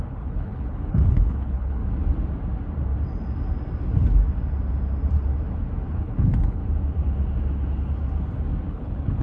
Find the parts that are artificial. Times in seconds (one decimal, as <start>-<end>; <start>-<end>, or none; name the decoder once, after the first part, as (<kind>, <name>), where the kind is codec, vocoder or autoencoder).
0.0-1.8 (codec, HILCodec); 5.9-6.6; 8.7-9.2